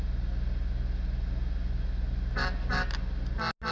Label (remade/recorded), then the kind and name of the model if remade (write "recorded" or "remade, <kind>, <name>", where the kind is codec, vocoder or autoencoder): recorded